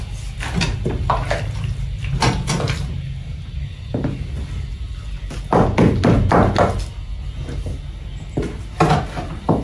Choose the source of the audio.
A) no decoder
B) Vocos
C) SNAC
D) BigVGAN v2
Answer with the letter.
A